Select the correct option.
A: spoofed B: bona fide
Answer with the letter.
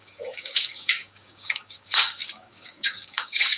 A